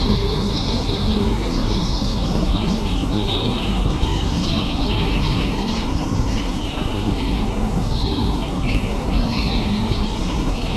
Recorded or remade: remade